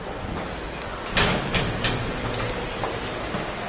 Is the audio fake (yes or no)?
no